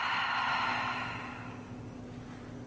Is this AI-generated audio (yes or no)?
no